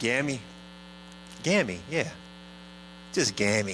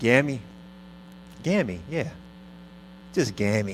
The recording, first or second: first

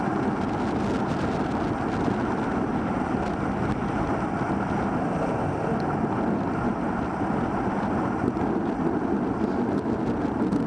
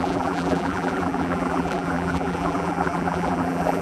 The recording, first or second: first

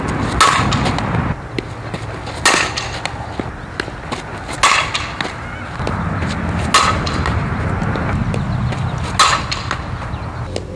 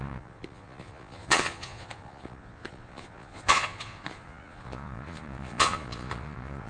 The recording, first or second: first